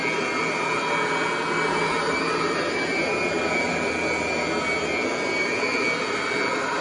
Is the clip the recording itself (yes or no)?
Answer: yes